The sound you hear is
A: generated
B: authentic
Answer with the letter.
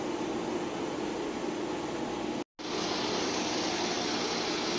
B